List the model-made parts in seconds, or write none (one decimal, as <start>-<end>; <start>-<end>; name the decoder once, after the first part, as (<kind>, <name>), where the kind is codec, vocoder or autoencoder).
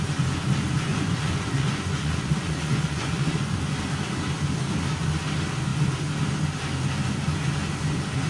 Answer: 0.9-3.6 (vocoder, Vocos)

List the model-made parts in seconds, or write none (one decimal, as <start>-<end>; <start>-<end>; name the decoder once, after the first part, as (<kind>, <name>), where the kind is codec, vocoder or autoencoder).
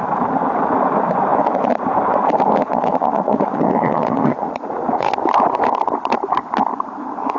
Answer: 2.7-5.1 (vocoder, Vocos)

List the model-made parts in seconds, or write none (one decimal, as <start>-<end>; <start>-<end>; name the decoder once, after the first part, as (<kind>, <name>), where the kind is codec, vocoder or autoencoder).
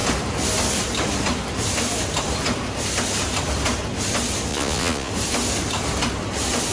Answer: 4.5-5.1 (vocoder, Vocos)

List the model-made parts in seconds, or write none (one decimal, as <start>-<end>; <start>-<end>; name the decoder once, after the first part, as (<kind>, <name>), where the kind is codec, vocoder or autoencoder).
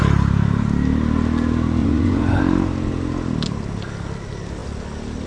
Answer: 1.8-2.4 (vocoder, Vocos)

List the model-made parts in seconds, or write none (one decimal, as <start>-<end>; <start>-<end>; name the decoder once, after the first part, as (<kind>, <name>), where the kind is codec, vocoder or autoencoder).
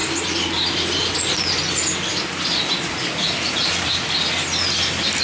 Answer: none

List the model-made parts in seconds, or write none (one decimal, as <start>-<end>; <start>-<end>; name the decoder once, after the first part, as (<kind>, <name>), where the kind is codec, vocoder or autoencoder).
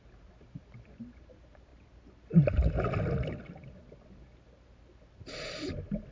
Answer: none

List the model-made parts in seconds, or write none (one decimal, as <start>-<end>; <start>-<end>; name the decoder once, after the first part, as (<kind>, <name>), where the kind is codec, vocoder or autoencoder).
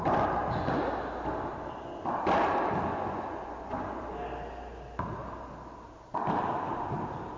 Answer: 2.9-4.0 (vocoder, Vocos)